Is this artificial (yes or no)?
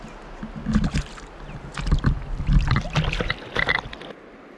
no